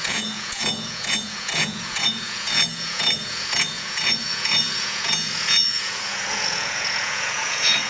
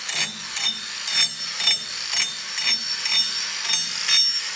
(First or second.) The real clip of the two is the second